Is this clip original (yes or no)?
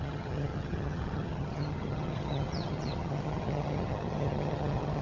no